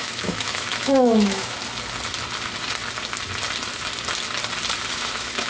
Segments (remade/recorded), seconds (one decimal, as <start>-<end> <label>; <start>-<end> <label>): 0.0-1.6 remade; 1.6-4.9 recorded; 4.9-5.5 remade